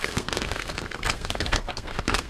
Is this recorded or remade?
remade